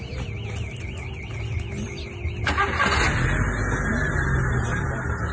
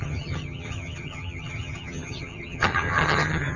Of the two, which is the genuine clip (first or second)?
first